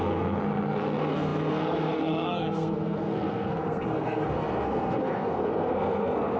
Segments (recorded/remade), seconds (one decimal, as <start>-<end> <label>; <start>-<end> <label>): 0.0-6.4 remade